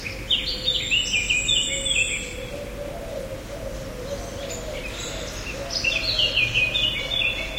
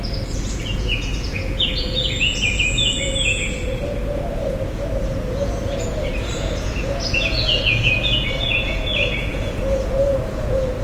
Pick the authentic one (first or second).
first